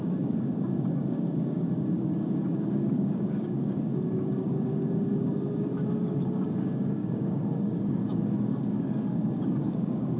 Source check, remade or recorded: remade